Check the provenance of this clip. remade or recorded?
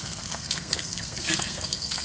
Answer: remade